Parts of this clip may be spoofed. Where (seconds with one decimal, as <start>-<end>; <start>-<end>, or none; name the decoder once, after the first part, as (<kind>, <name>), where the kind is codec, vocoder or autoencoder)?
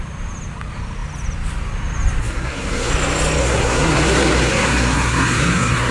2.2-2.9 (codec, SNAC); 3.4-5.9